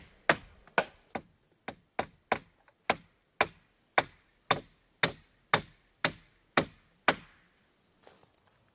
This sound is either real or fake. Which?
real